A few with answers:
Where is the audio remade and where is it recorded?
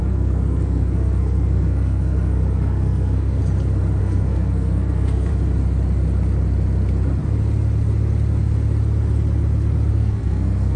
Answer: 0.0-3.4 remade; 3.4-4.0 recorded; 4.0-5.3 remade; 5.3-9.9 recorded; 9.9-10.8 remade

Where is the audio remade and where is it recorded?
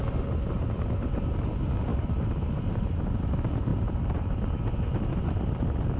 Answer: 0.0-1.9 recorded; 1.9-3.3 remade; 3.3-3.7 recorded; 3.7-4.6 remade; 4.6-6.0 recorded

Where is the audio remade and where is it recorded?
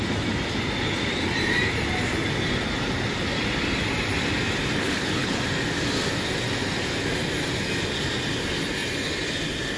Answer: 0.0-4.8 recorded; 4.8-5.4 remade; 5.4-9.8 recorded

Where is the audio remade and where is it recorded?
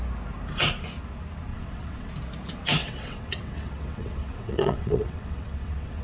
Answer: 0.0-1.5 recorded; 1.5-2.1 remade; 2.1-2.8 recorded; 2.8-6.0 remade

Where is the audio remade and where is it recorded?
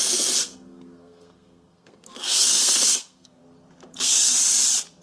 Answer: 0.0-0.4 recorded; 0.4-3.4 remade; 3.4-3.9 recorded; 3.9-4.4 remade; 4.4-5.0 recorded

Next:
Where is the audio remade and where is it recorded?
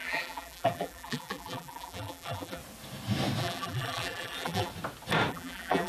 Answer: 0.0-2.6 remade; 2.6-3.4 recorded; 3.4-4.7 remade; 4.7-5.3 recorded; 5.3-5.9 remade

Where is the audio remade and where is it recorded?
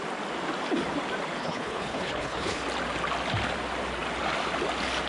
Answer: 0.0-1.4 recorded; 1.4-2.6 remade; 2.6-5.1 recorded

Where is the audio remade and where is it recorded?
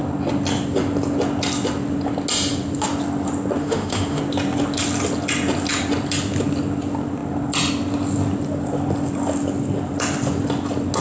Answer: 0.0-3.6 recorded; 3.6-4.2 remade; 4.2-11.0 recorded